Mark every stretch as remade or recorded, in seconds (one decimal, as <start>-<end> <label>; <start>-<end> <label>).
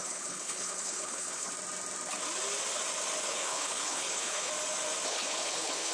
0.0-1.5 remade; 1.5-3.3 recorded; 3.3-4.5 remade; 4.5-5.1 recorded; 5.1-5.9 remade